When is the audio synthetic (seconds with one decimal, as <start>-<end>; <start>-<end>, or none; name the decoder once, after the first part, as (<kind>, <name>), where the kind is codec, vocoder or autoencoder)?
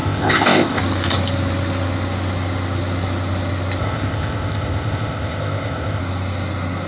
0.0-0.8 (codec, ZipCodec); 3.8-6.0